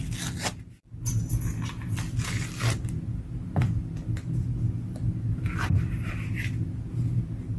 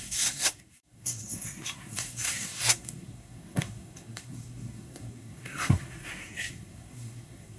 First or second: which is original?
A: first